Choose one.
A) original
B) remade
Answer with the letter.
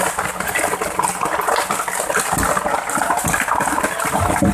A